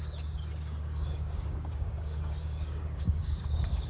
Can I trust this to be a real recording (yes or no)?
no